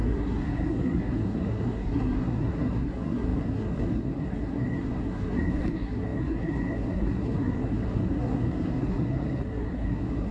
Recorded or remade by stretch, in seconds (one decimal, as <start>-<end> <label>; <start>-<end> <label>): 0.0-10.3 remade